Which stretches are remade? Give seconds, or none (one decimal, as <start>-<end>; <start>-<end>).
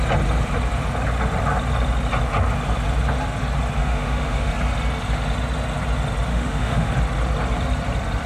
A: 3.8-4.5; 6.3-6.9